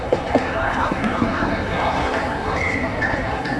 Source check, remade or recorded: remade